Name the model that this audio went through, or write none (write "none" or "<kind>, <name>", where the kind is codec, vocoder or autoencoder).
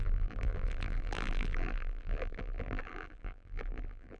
vocoder, BigVGAN v2